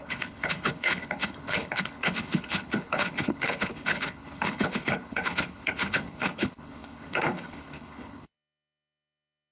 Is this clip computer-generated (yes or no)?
yes